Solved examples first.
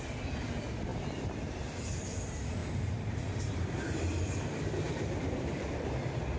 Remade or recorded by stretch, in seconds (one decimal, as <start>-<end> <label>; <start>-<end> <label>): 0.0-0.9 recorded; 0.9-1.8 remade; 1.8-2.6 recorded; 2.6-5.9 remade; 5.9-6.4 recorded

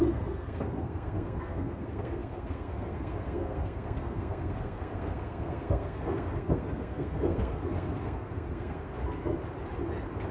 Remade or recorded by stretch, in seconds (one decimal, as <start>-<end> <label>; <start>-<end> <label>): 0.0-9.0 remade; 9.0-10.3 recorded

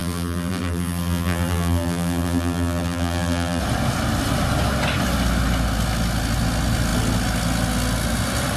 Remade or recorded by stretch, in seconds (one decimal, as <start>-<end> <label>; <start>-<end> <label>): 0.0-3.6 remade; 3.6-8.6 recorded

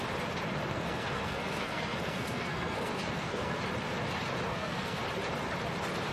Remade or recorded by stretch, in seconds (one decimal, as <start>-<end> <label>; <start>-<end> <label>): 0.0-0.7 recorded; 0.7-3.6 remade; 3.6-4.5 recorded; 4.5-5.0 remade; 5.0-6.1 recorded

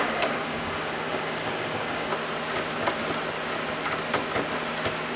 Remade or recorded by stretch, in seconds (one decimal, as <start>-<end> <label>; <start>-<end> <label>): 0.0-2.1 remade; 2.1-5.2 recorded

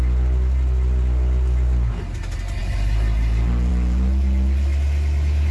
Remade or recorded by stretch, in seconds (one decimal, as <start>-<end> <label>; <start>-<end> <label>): 0.0-5.5 recorded

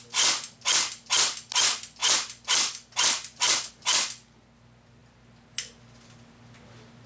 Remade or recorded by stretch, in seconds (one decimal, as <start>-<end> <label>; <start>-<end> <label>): 0.0-7.1 recorded

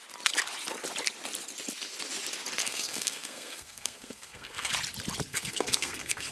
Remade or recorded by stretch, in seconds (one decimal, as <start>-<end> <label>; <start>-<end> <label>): 0.0-2.6 recorded; 2.6-4.7 remade; 4.7-5.3 recorded; 5.3-6.3 remade